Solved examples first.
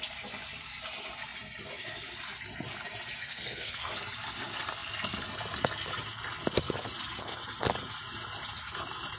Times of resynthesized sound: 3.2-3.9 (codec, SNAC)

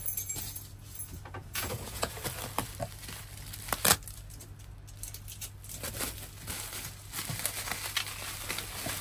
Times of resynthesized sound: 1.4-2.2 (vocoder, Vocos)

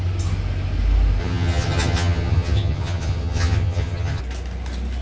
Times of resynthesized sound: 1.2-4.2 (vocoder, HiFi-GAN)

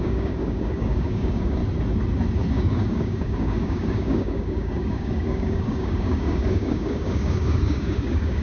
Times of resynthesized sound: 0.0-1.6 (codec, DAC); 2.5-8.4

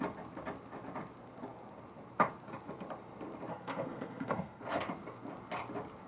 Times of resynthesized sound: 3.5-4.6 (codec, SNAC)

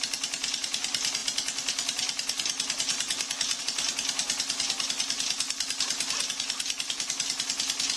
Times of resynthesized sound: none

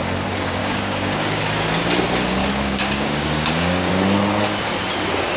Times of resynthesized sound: 0.6-1.4 (codec, DAC); 2.4-3.9